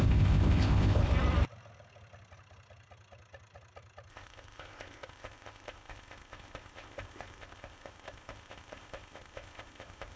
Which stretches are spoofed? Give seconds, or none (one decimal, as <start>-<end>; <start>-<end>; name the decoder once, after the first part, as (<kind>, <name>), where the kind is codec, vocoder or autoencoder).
0.0-1.0 (codec, ZipCodec); 4.1-10.2